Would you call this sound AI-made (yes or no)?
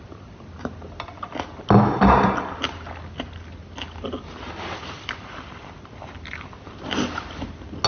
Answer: no